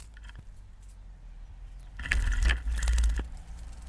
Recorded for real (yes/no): yes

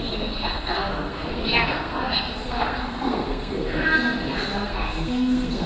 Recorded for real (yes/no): no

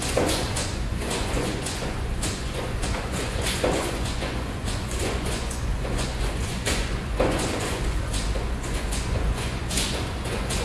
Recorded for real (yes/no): no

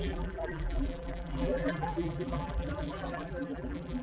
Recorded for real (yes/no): no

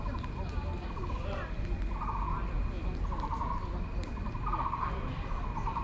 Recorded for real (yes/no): yes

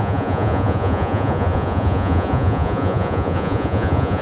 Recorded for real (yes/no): no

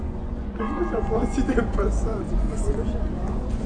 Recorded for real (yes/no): no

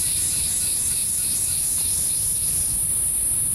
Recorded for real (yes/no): yes